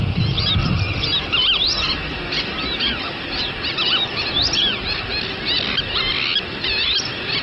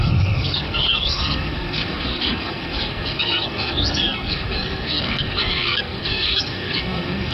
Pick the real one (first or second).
first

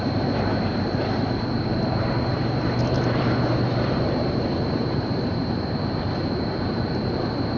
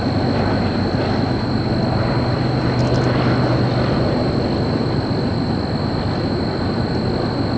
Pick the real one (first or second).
second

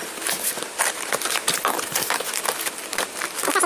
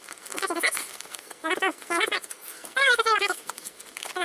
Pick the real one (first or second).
first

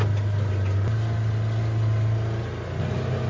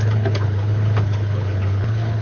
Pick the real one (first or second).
first